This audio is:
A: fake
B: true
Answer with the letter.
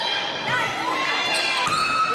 B